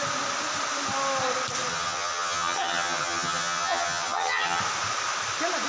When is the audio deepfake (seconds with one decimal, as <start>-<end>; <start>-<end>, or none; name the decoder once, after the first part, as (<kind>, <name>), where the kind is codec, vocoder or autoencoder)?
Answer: 1.7-4.6 (vocoder, HiFi-GAN)